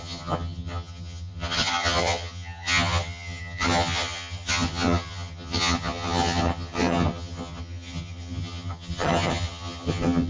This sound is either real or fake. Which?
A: fake